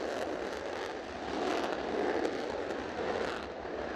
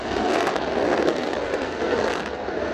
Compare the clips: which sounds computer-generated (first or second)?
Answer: second